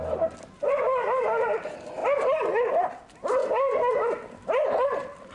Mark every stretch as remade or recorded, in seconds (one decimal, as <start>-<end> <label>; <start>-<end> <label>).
0.0-2.0 remade; 2.0-2.9 recorded; 2.9-3.4 remade; 3.4-3.9 recorded; 3.9-5.3 remade

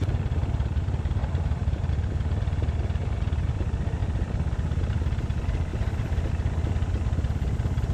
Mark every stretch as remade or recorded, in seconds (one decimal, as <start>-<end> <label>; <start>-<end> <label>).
0.0-1.2 recorded; 1.2-1.9 remade; 1.9-5.7 recorded; 5.7-6.3 remade; 6.3-7.9 recorded

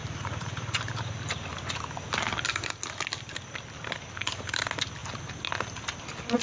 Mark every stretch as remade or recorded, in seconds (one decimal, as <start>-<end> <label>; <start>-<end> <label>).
0.0-1.1 remade; 1.1-6.4 recorded

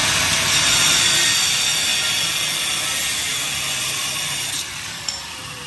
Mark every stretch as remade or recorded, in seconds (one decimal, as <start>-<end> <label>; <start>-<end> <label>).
0.0-1.9 remade; 1.9-3.7 recorded; 3.7-5.7 remade

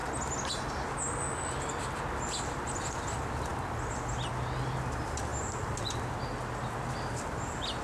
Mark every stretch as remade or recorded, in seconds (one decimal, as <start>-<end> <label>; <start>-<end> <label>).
0.0-7.8 recorded

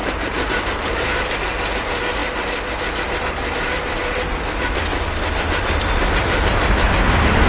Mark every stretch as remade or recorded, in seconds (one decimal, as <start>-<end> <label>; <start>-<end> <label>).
0.0-1.3 remade; 1.3-7.5 recorded

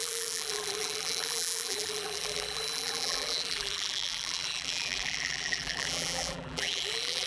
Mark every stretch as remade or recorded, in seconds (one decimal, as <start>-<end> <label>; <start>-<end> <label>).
0.0-7.3 remade